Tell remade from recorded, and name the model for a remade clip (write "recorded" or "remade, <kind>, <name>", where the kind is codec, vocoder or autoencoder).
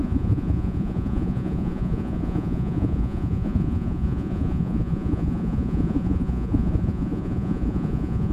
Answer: remade, vocoder, Vocos